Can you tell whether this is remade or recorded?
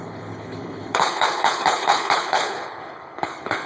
remade